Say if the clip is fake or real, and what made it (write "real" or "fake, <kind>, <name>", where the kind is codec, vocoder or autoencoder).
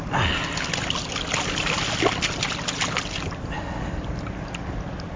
real